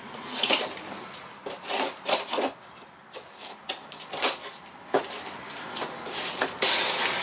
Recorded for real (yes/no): yes